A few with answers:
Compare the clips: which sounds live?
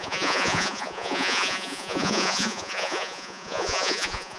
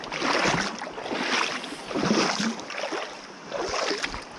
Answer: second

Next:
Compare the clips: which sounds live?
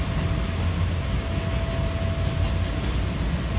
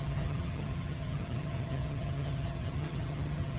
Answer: first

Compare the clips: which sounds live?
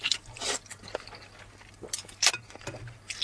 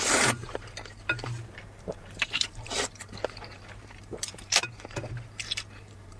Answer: first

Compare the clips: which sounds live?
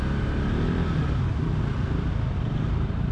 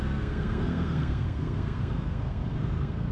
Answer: first